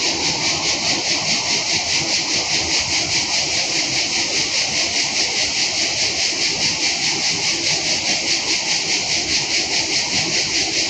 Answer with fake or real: real